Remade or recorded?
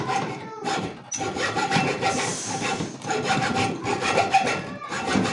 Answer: recorded